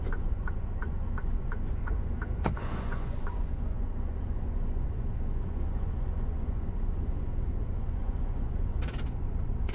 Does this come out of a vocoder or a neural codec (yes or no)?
yes